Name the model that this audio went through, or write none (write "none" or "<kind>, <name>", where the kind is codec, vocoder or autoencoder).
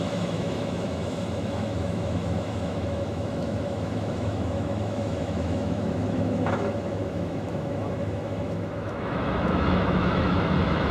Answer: autoencoder, DAC-VAE